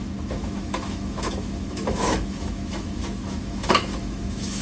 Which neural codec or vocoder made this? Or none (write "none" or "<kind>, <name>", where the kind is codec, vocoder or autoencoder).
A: autoencoder, DAC-VAE